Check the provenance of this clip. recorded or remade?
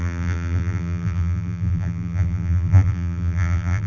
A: remade